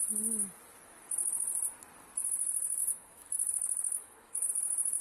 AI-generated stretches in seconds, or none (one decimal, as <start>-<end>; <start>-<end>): 2.8-4.5